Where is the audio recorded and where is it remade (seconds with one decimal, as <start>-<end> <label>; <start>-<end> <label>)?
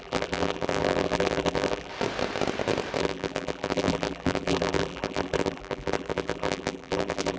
0.0-1.9 remade; 1.9-3.0 recorded; 3.0-7.4 remade